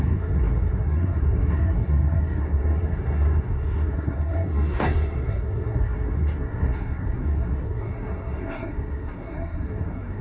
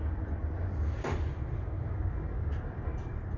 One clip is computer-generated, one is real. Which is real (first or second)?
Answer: second